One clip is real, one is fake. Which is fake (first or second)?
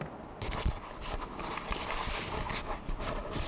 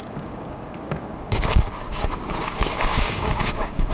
second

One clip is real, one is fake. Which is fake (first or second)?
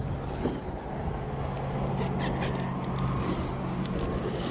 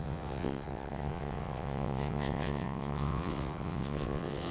second